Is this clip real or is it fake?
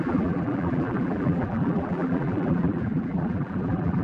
fake